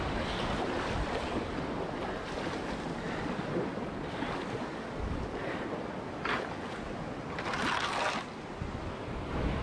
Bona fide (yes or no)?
yes